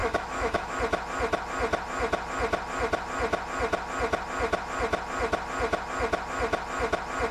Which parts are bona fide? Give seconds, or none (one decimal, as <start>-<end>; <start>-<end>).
0.7-7.3